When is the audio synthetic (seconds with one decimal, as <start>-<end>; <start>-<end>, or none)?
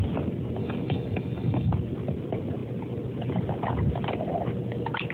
0.6-1.7